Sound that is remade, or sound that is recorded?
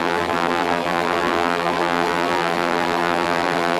remade